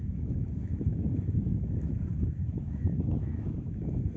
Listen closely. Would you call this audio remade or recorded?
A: remade